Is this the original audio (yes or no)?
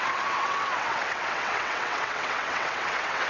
no